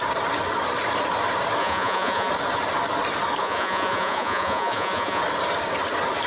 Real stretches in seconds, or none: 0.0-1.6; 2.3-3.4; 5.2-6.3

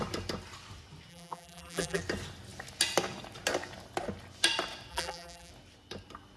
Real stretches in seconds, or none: 0.0-1.1; 2.0-4.9; 5.5-6.4